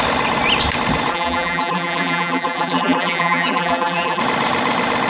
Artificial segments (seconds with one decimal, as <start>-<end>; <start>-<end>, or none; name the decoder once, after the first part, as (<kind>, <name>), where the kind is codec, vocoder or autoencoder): 1.1-4.2 (vocoder, BigVGAN v2)